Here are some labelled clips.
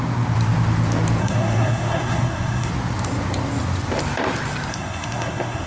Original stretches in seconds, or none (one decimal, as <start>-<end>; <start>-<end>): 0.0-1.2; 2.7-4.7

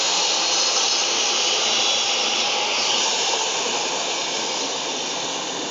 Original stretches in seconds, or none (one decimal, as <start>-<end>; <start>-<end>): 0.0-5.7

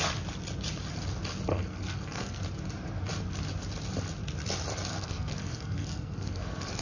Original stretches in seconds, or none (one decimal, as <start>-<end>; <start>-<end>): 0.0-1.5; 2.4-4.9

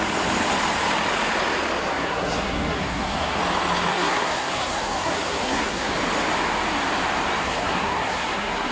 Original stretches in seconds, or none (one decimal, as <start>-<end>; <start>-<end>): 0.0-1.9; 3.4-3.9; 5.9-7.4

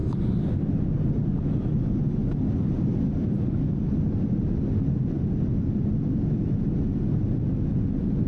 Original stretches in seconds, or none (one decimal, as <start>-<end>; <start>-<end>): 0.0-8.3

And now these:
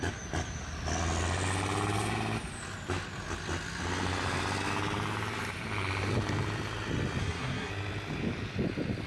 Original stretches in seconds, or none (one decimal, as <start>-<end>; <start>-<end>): 0.0-7.2; 7.7-9.1

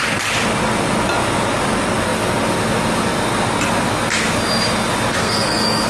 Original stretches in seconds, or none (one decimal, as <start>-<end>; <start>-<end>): 0.0-5.2